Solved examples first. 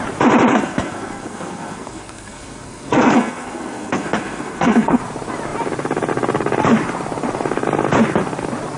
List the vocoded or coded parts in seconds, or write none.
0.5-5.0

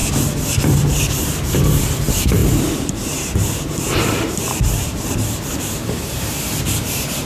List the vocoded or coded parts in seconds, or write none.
0.5-7.3

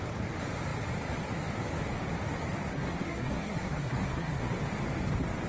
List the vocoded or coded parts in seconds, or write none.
2.7-4.5

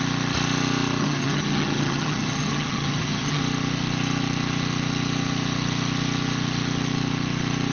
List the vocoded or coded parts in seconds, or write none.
1.0-3.4

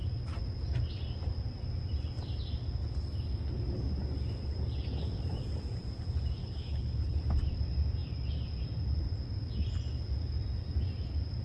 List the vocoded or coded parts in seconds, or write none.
6.4-7.2

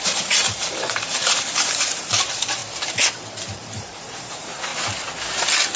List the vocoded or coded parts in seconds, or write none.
0.0-2.6; 3.3-4.7

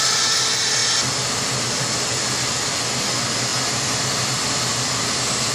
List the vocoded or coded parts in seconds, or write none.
none